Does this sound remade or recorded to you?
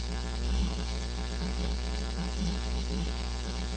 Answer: remade